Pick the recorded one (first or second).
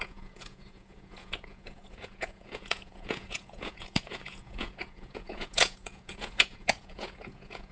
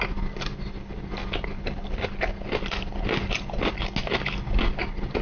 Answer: second